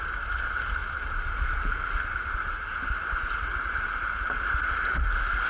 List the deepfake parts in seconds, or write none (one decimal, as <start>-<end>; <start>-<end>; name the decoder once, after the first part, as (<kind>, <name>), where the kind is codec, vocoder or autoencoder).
none